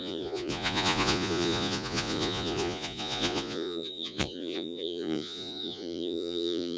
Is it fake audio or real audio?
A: fake